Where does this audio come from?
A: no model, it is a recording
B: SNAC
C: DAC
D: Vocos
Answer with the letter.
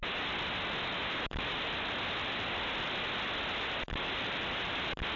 A